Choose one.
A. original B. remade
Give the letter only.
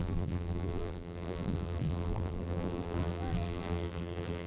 B